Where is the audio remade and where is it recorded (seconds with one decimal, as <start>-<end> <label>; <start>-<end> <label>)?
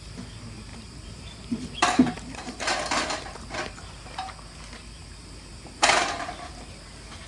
0.0-0.7 recorded; 0.7-4.3 remade; 4.3-5.5 recorded; 5.5-6.3 remade; 6.3-7.3 recorded